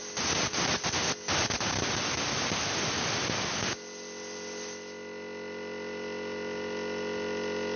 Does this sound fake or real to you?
real